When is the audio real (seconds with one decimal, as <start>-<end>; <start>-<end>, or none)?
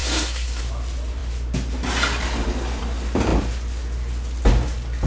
0.6-5.1